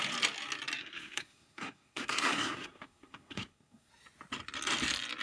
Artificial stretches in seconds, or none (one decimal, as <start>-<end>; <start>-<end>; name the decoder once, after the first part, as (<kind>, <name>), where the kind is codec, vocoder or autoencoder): 0.8-3.9 (codec, SNAC)

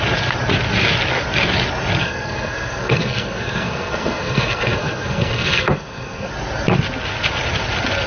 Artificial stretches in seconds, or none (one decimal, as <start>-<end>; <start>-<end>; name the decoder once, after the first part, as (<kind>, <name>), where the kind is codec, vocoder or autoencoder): 2.0-6.3 (codec, SNAC)

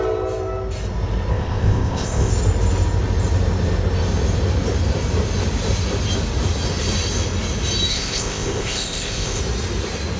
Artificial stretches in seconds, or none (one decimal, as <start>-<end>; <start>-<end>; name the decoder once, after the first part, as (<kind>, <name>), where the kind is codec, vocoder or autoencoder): 1.3-2.3 (codec, ZipCodec); 7.9-9.4

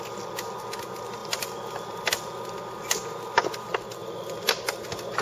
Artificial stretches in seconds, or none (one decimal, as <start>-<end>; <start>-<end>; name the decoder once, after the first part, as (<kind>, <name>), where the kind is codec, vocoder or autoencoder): 1.2-2.1 (vocoder, BigVGAN v2); 4.0-4.5

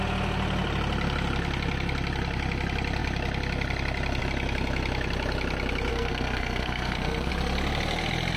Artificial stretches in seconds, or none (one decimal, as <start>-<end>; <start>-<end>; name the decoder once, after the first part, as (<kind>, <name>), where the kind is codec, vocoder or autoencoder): 5.9-7.3 (codec, SNAC)

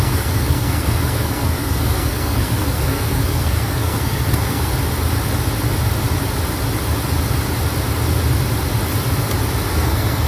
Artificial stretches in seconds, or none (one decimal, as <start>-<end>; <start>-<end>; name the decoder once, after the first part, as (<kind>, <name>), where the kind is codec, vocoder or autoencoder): 0.0-4.7 (codec, SNAC); 9.7-10.3